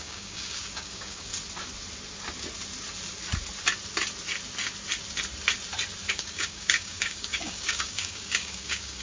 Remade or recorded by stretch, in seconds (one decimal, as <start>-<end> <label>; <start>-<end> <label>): 0.0-1.3 remade; 1.3-6.1 recorded; 6.1-9.0 remade